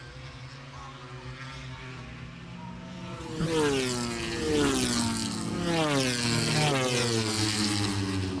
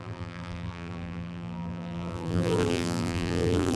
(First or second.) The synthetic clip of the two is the second